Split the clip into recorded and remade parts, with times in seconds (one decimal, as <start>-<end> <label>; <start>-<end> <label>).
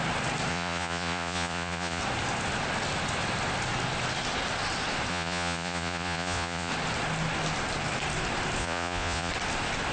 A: 0.0-0.5 recorded; 0.5-2.0 remade; 2.0-5.1 recorded; 5.1-6.7 remade; 6.7-8.6 recorded; 8.6-9.3 remade; 9.3-9.9 recorded